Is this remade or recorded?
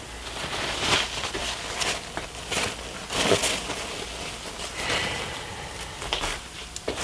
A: recorded